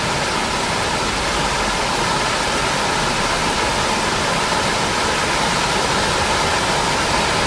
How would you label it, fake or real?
real